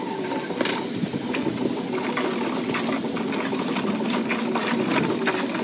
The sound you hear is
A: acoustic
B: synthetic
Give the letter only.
A